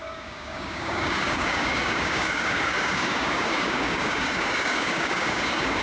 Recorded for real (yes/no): no